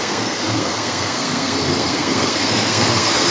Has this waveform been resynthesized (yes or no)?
yes